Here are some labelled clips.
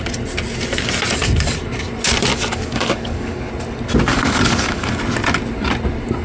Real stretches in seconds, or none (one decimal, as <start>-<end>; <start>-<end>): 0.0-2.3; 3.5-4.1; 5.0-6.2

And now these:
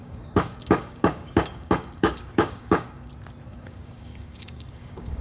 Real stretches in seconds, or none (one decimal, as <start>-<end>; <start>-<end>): 3.1-3.5

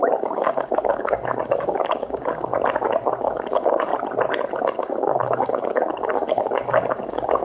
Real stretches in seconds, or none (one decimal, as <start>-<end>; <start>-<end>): 2.5-3.2; 3.9-4.6